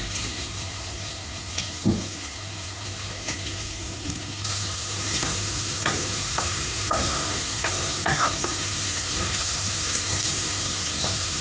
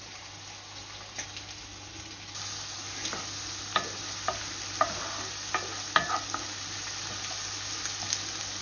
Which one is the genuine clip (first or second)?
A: second